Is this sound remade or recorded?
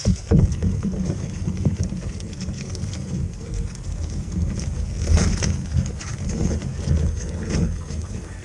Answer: remade